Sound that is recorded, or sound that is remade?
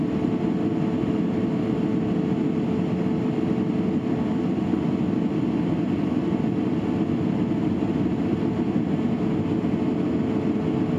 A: recorded